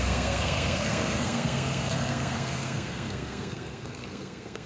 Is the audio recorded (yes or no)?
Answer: no